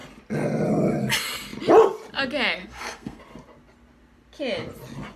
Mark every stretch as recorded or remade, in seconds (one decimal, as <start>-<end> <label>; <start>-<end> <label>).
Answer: 0.0-2.6 recorded; 2.6-3.2 remade; 3.2-5.2 recorded